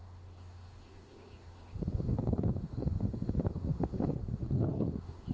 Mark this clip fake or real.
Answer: fake